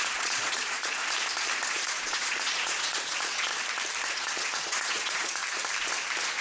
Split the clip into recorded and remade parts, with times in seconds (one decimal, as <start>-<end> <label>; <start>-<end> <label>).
0.0-1.0 remade; 1.0-1.7 recorded; 1.7-3.5 remade; 3.5-4.1 recorded; 4.1-5.4 remade; 5.4-6.4 recorded